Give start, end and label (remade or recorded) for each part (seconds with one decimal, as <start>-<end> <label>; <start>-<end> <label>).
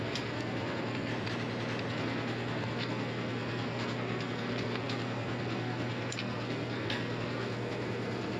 0.0-1.1 remade; 1.1-1.9 recorded; 1.9-8.4 remade